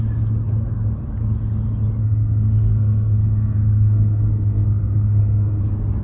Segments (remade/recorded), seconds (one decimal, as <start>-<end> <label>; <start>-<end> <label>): 0.0-2.0 recorded; 2.0-5.6 remade; 5.6-6.0 recorded